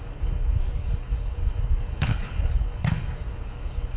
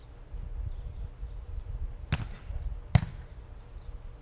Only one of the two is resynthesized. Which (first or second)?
first